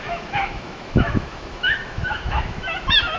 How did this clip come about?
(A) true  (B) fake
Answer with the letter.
B